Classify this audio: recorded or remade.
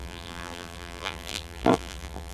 remade